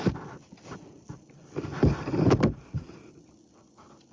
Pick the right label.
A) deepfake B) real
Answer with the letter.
B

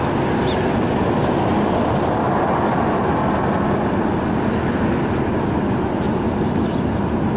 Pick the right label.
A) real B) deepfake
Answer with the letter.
A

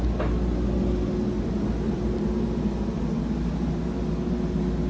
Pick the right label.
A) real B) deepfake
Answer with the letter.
A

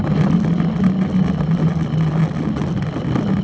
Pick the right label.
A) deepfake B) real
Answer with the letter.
B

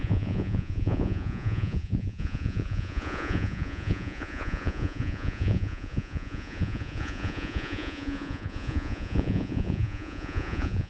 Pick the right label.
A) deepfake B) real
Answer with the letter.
A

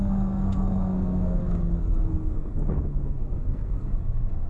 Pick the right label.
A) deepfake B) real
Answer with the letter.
A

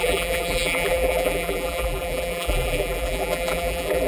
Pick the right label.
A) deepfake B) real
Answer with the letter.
A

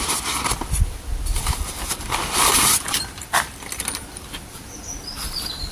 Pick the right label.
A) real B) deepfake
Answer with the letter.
B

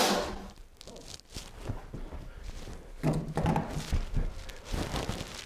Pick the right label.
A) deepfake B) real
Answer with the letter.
B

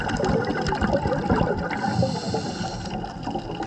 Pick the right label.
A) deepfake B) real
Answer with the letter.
B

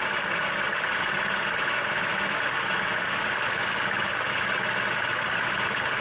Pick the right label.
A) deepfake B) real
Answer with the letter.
B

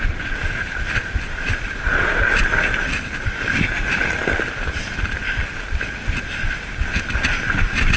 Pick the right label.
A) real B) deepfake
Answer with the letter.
A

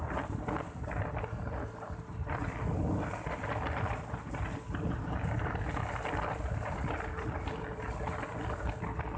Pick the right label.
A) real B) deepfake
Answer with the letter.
A